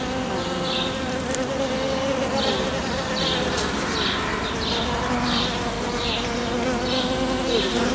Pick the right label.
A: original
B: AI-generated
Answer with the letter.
A